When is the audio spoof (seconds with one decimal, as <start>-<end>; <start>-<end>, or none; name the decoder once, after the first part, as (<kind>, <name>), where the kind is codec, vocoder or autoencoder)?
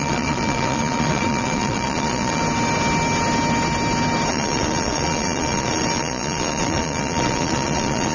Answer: 0.0-2.4 (vocoder, Vocos); 4.3-8.1